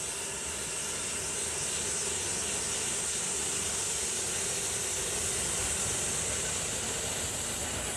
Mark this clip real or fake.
real